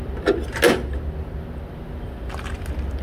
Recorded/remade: recorded